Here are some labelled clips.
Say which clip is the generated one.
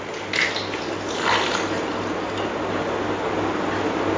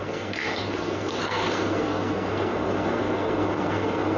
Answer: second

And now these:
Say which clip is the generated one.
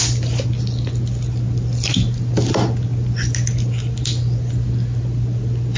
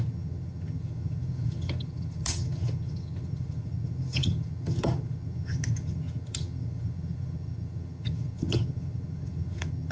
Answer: second